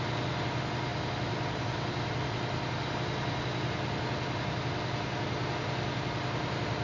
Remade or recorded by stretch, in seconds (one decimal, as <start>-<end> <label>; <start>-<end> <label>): 0.0-6.8 recorded